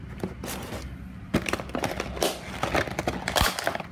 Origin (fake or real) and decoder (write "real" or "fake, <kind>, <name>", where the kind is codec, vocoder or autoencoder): real